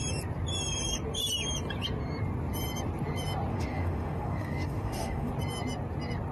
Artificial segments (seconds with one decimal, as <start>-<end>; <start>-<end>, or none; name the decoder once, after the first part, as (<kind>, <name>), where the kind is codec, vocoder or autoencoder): 3.5-5.3 (autoencoder, DAC-VAE)